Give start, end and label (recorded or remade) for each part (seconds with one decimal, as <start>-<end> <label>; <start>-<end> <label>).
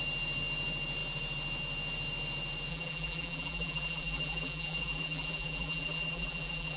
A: 0.0-2.7 recorded; 2.7-6.8 remade